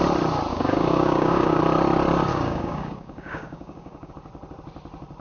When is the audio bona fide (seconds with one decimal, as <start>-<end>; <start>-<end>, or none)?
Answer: 0.0-0.5; 1.6-2.3; 4.1-5.2